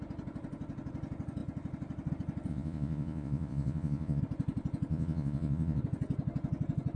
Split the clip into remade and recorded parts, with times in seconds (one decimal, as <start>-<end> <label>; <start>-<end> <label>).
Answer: 0.0-2.5 recorded; 2.5-4.2 remade; 4.2-4.9 recorded; 4.9-5.8 remade; 5.8-7.0 recorded